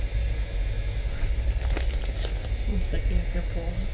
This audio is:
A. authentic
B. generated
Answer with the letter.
A